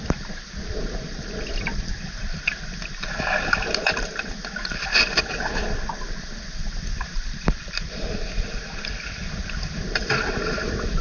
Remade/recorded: remade